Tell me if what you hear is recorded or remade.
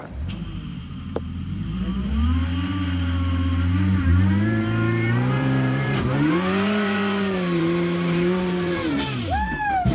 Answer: remade